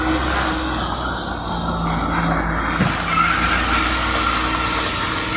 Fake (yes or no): no